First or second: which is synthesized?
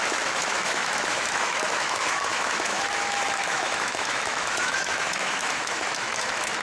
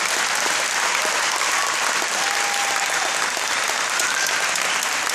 first